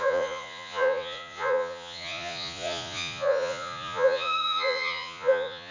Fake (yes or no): yes